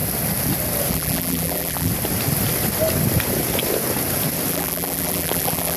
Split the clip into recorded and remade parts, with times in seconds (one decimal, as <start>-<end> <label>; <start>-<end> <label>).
0.0-0.9 recorded; 0.9-1.9 remade; 1.9-4.5 recorded; 4.5-5.8 remade